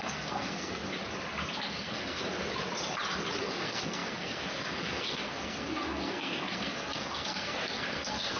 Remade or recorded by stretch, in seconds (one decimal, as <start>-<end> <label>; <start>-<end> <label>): 0.0-0.8 remade; 0.8-1.7 recorded; 1.7-2.2 remade; 2.2-3.4 recorded; 3.4-8.4 remade